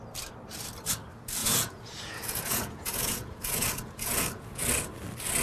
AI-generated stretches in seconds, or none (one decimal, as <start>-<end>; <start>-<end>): 1.4-4.6